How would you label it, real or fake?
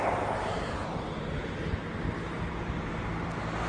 real